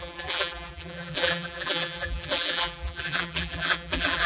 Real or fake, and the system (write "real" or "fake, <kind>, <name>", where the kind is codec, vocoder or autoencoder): fake, vocoder, BigVGAN v2